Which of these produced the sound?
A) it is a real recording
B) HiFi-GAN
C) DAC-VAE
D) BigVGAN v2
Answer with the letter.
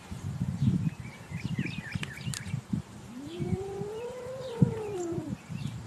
D